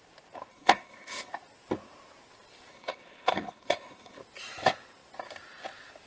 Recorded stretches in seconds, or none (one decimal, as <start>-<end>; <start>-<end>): 0.0-0.5; 1.3-2.7; 4.2-6.1